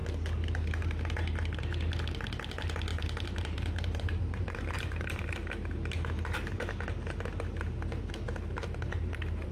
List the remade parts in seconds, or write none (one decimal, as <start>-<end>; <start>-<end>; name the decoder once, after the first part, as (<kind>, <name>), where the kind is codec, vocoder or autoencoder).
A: 2.9-5.3 (vocoder, BigVGAN v2); 8.5-9.5

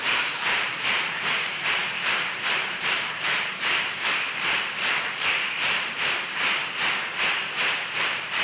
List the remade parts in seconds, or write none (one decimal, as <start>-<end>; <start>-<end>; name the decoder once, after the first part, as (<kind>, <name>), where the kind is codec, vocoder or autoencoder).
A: 0.0-6.6 (vocoder, BigVGAN v2); 7.8-8.4

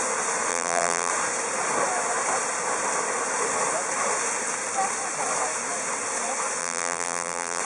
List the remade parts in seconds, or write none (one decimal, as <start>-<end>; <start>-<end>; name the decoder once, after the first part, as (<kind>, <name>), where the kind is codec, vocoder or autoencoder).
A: 0.5-1.1 (vocoder, BigVGAN v2); 6.6-7.6